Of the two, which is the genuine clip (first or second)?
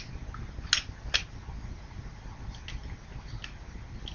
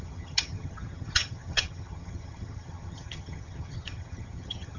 first